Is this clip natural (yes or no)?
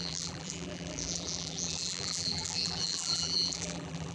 no